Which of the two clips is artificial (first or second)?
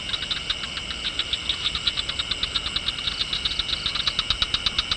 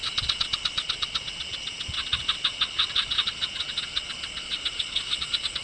second